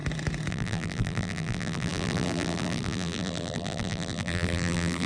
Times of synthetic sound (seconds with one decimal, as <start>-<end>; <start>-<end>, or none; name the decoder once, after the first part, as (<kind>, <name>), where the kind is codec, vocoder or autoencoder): 0.5-5.1 (vocoder, BigVGAN v2)

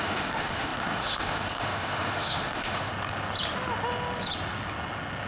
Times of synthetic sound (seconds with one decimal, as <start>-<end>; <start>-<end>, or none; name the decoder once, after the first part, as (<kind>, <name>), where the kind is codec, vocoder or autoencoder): 0.0-2.9 (autoencoder, DAC-VAE)